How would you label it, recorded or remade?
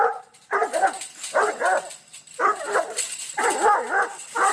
recorded